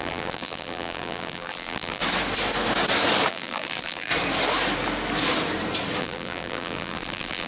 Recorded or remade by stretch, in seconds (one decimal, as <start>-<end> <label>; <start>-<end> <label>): 0.0-2.0 remade; 2.0-3.3 recorded; 3.3-4.1 remade; 4.1-6.0 recorded; 6.0-7.5 remade